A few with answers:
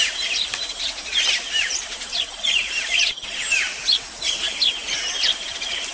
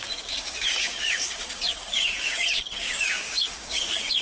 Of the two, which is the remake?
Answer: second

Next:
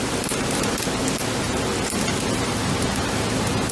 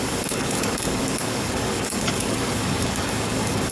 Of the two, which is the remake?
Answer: second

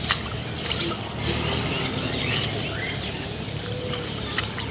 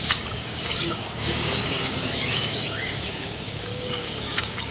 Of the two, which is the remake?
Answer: second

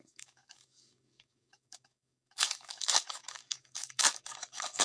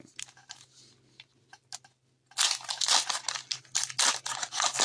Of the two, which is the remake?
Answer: first